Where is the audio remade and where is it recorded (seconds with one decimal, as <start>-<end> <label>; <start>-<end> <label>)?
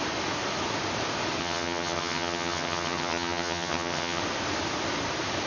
0.0-1.4 recorded; 1.4-4.2 remade; 4.2-5.5 recorded